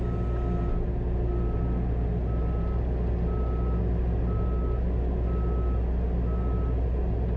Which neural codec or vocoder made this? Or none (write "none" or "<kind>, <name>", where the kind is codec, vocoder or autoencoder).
none